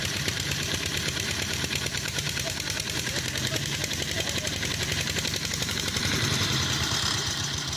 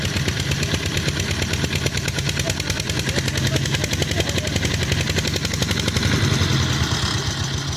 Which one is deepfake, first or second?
first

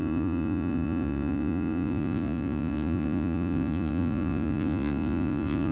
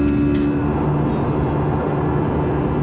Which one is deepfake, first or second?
first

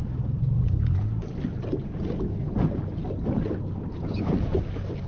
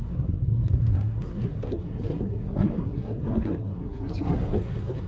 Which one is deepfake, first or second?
second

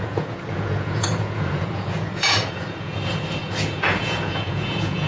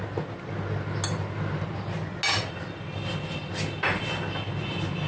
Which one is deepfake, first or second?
first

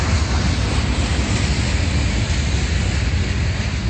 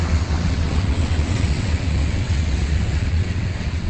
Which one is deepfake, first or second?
second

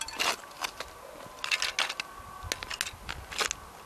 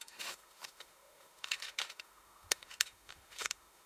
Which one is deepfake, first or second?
second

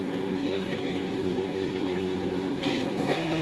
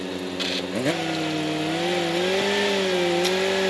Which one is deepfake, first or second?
first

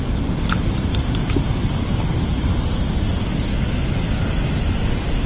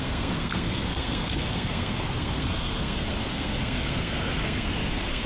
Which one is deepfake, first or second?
second